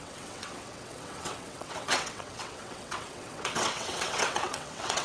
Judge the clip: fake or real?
fake